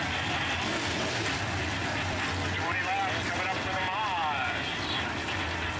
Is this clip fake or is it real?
real